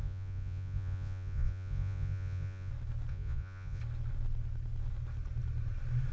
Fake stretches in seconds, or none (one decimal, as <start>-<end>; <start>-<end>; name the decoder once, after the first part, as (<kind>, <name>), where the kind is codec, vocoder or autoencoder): 0.0-2.7 (vocoder, Vocos); 3.1-3.8